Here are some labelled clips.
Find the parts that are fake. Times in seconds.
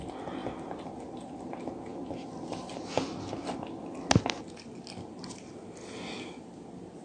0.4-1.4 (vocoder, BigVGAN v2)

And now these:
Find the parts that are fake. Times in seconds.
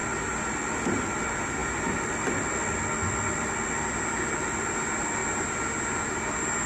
none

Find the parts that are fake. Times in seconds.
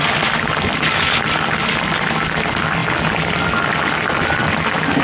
none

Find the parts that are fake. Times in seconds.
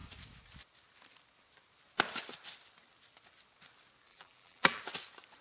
4.1-4.8 (vocoder, BigVGAN v2)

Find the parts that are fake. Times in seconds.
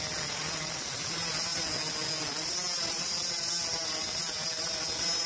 none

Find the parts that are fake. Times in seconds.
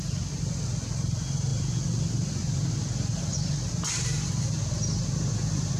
none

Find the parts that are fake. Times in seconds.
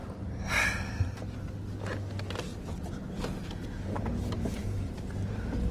none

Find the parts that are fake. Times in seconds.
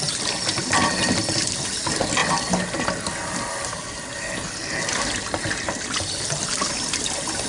none